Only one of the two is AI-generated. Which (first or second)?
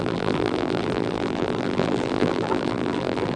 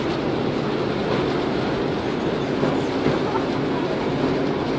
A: first